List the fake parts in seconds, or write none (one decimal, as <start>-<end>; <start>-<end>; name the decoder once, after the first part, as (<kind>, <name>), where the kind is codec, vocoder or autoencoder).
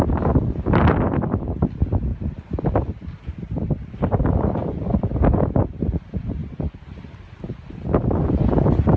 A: 2.1-4.2 (vocoder, BigVGAN v2)